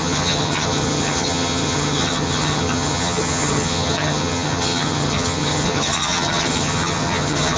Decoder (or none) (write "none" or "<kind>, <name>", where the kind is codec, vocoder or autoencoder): vocoder, HiFi-GAN